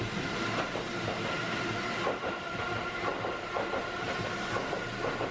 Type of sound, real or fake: real